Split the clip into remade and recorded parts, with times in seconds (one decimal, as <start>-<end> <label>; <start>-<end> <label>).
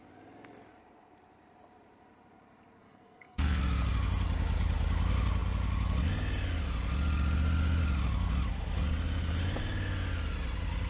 0.0-2.8 recorded; 2.8-3.6 remade; 3.6-10.9 recorded